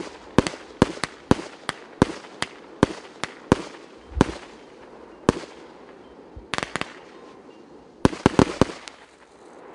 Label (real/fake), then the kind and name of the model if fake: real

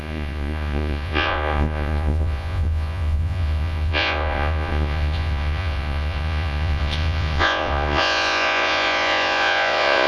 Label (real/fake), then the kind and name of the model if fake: fake, vocoder, Vocos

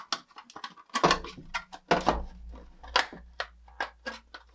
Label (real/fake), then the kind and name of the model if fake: real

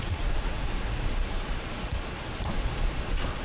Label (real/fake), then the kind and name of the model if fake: fake, vocoder, Vocos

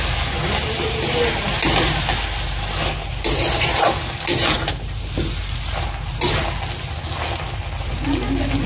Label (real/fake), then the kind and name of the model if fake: real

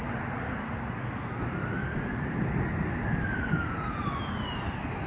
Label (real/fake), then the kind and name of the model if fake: real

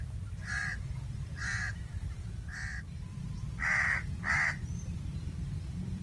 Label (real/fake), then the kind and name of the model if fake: fake, vocoder, BigVGAN v2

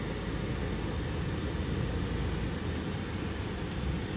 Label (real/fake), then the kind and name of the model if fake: real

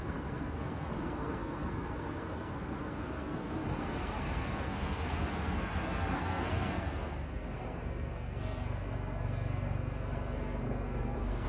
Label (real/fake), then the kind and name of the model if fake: fake, codec, SNAC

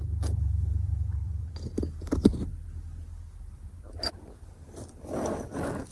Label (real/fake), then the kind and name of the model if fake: real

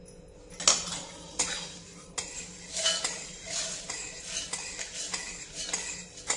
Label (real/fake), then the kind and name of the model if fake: real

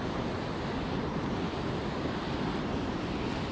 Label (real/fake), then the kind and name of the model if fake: real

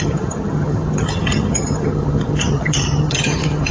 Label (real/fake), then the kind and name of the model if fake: fake, vocoder, HiFi-GAN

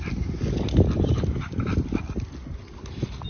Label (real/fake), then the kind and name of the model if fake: real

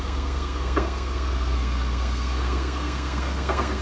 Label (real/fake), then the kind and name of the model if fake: fake, codec, SNAC